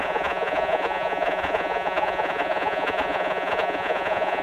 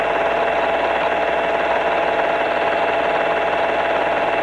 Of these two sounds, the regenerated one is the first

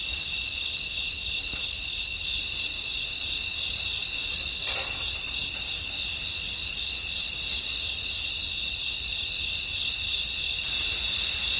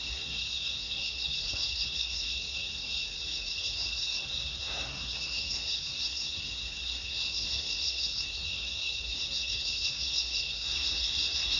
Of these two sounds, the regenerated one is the second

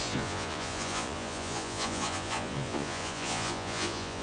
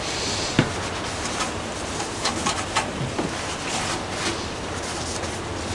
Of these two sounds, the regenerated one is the first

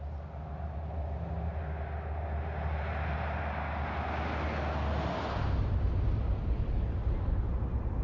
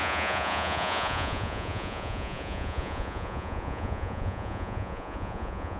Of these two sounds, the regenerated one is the second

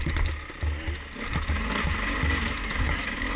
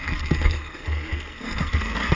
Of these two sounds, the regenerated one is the second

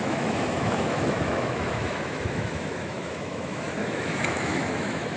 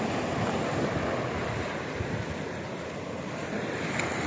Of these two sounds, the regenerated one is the first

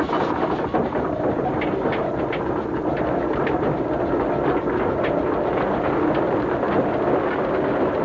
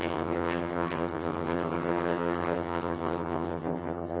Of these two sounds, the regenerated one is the second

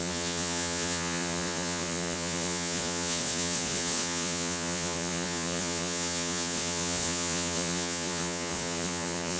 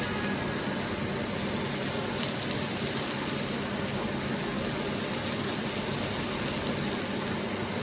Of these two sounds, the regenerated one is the first